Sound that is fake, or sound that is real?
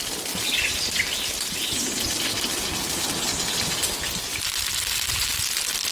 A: real